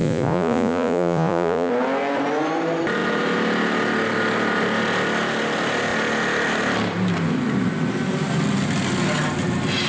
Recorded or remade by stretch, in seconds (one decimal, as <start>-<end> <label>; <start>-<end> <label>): 0.0-1.7 remade; 1.7-9.9 recorded